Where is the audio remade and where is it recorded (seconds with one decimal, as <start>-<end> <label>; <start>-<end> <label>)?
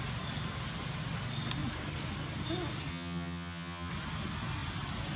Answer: 0.0-2.9 recorded; 2.9-3.9 remade; 3.9-5.2 recorded